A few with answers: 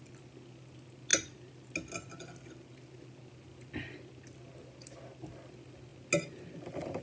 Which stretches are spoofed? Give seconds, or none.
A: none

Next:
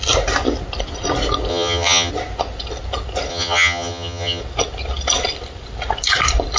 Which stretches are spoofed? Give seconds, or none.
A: 1.5-2.1 (vocoder, HiFi-GAN); 3.3-4.4

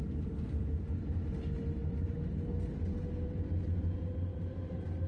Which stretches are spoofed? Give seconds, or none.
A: none

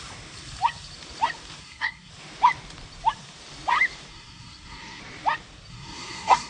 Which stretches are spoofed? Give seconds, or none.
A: 1.6-2.1 (codec, SNAC); 4.1-5.0; 5.7-6.5

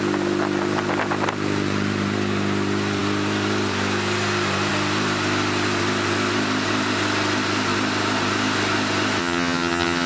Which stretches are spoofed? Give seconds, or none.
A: 9.2-10.1 (vocoder, HiFi-GAN)

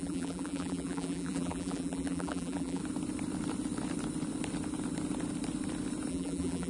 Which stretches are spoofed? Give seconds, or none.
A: 0.0-2.8 (vocoder, BigVGAN v2); 6.1-6.7